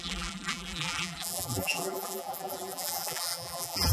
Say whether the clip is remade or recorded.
remade